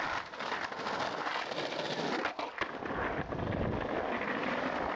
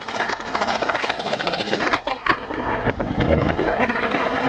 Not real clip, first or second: second